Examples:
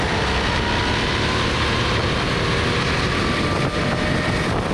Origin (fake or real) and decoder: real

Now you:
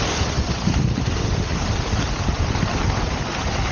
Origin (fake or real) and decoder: real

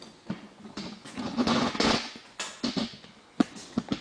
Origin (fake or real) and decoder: fake, vocoder, Vocos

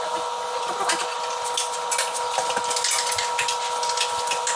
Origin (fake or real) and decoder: real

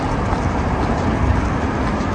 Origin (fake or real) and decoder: real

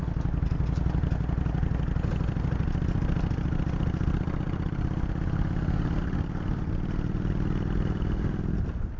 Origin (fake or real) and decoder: real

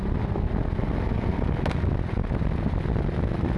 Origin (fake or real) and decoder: real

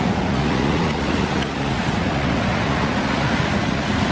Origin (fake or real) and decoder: fake, vocoder, Vocos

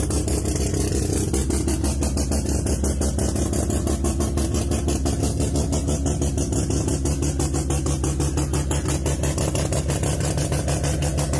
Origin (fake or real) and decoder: real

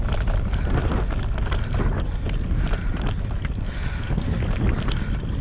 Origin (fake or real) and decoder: real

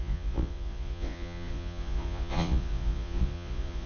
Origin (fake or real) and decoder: fake, vocoder, Vocos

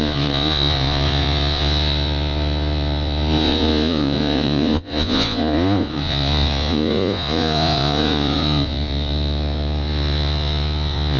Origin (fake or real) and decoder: fake, vocoder, Vocos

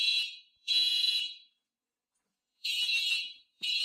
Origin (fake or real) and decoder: fake, vocoder, Vocos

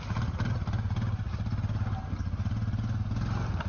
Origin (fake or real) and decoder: real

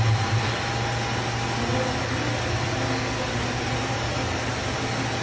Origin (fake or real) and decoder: real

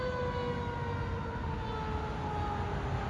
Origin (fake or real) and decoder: real